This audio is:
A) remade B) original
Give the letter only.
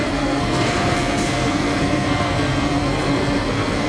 A